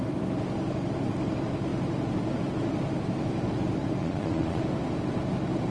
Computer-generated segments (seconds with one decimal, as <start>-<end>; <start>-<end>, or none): 4.0-4.6